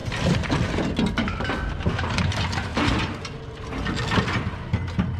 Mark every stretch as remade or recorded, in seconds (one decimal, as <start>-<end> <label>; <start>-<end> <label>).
0.0-2.7 recorded; 2.7-3.4 remade; 3.4-5.2 recorded